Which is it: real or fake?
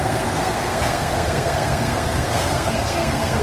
fake